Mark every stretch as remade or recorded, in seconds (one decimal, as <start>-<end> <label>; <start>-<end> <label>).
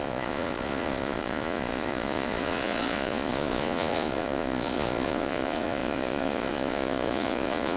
0.0-7.8 remade